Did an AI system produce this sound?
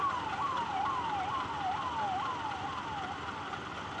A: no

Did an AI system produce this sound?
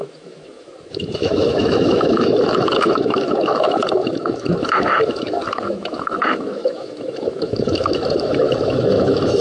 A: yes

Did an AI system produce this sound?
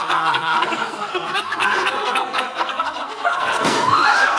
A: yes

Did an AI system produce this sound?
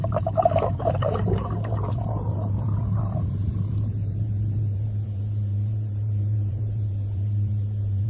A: yes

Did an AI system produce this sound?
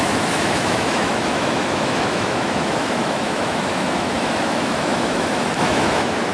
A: yes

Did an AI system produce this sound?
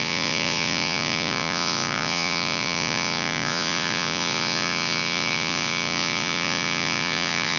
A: yes